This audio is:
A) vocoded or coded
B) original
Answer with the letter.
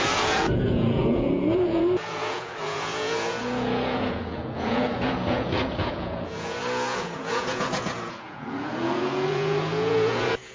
A